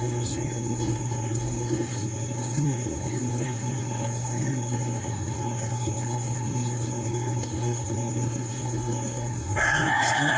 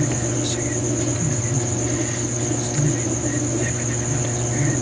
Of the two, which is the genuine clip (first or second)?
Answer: second